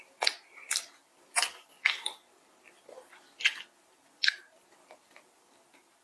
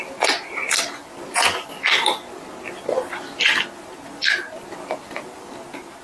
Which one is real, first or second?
second